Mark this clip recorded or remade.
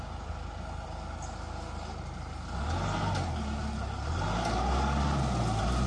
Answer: recorded